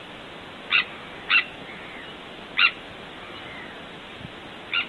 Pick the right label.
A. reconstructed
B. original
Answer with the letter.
B